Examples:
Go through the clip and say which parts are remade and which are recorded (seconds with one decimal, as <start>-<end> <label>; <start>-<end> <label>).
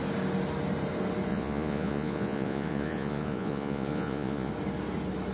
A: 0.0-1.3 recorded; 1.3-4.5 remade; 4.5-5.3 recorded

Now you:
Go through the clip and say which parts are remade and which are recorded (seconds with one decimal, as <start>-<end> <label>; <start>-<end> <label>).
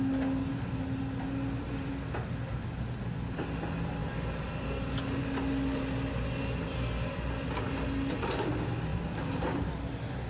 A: 0.0-8.9 recorded; 8.9-9.7 remade; 9.7-10.3 recorded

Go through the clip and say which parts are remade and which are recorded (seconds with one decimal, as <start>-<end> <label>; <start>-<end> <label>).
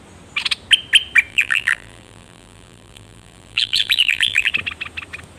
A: 0.0-1.3 recorded; 1.3-4.5 remade; 4.5-5.4 recorded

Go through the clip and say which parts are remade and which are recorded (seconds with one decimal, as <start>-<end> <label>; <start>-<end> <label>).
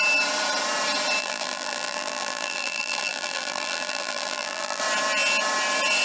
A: 0.0-1.2 recorded; 1.2-4.8 remade; 4.8-6.0 recorded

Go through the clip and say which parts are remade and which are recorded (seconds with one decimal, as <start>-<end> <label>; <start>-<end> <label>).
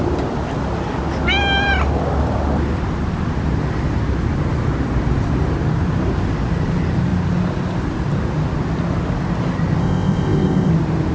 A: 0.0-9.8 recorded; 9.8-10.7 remade; 10.7-11.1 recorded